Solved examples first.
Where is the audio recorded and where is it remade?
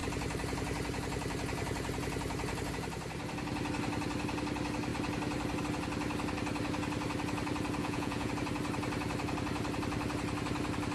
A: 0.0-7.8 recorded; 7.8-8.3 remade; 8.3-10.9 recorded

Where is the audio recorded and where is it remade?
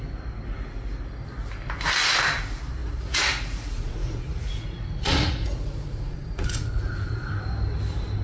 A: 0.0-2.8 recorded; 2.8-7.3 remade; 7.3-8.2 recorded